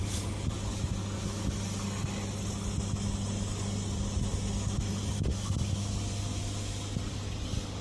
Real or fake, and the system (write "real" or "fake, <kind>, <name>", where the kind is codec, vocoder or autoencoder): real